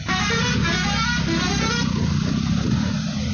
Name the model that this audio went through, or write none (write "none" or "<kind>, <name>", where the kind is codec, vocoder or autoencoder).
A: none